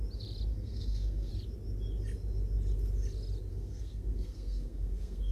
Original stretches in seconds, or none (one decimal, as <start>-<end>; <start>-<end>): 0.0-0.5; 1.3-3.5